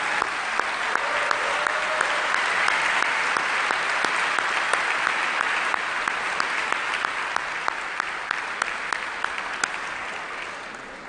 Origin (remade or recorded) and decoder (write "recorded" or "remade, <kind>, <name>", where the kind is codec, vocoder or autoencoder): recorded